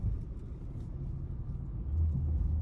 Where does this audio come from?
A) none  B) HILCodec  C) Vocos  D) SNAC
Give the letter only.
A